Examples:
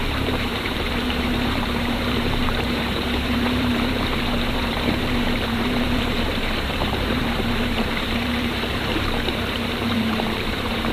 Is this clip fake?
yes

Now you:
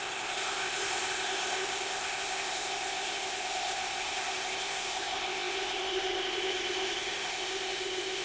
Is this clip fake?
yes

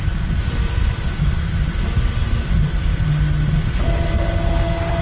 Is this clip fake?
no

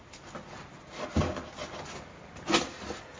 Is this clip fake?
no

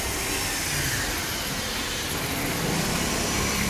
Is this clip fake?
no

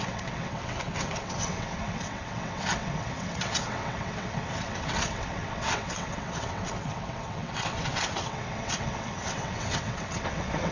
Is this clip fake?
yes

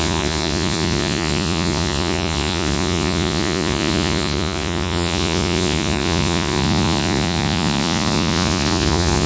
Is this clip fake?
yes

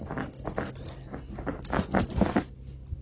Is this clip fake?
no